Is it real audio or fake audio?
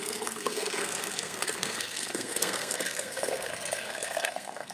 fake